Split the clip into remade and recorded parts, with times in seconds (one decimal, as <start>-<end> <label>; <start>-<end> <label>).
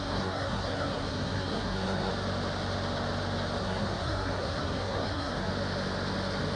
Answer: 0.0-2.1 remade; 2.1-3.6 recorded; 3.6-5.5 remade; 5.5-6.6 recorded